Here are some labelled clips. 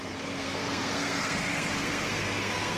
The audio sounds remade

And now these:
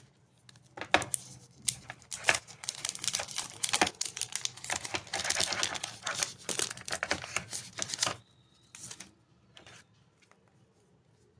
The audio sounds recorded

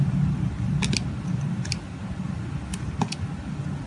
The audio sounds recorded